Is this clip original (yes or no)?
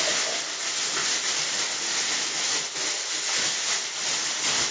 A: yes